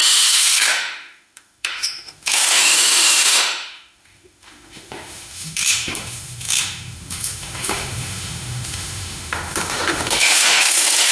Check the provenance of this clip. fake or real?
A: fake